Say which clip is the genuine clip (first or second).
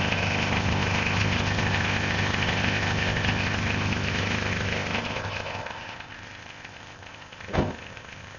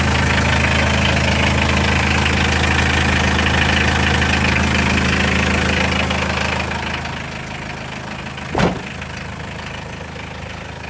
second